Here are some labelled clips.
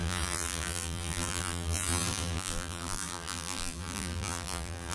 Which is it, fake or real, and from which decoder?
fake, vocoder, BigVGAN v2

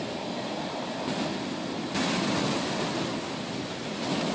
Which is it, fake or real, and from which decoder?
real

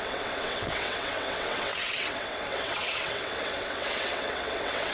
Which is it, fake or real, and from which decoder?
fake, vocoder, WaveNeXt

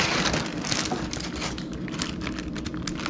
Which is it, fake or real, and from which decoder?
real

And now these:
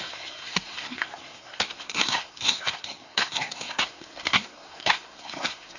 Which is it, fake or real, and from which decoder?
fake, codec, SNAC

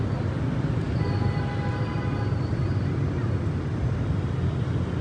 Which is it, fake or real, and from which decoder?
real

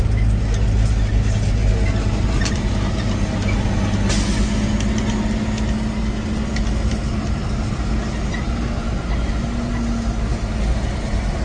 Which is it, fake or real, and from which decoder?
real